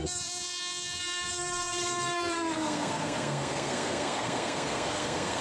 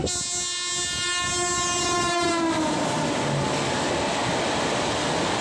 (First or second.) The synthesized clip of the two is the first